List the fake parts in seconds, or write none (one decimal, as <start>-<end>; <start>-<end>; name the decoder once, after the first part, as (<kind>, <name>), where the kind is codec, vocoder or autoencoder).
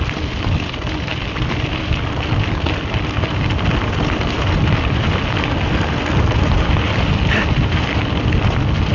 none